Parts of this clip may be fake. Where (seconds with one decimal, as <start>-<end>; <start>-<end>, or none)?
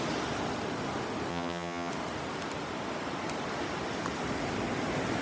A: 1.3-1.9